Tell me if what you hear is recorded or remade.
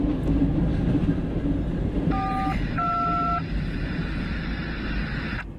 recorded